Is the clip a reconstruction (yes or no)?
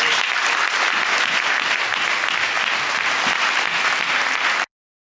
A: no